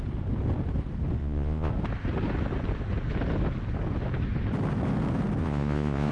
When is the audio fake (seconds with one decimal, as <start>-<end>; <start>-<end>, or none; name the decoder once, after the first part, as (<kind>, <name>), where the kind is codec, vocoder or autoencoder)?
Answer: 1.2-1.7 (vocoder, Vocos); 5.4-6.1